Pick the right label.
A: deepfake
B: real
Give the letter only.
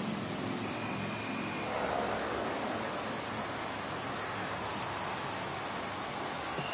B